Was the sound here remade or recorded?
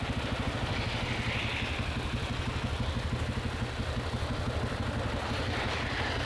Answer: recorded